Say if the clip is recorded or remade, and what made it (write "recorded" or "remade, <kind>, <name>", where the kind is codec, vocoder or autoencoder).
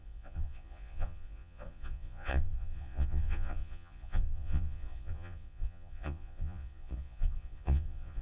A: remade, vocoder, Vocos